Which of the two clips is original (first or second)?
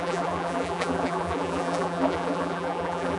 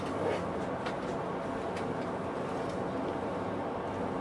second